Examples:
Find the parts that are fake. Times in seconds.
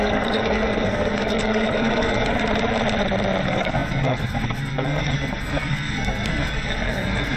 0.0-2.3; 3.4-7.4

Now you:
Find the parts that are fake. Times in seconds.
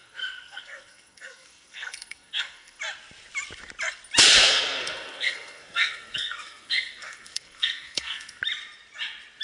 0.0-2.8; 4.4-8.4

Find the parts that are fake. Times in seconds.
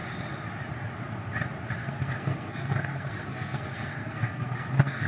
1.8-5.1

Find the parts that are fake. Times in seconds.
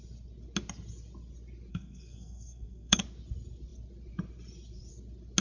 1.7-3.0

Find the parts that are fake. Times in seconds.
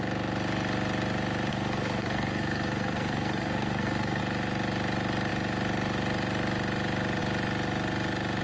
1.5-4.2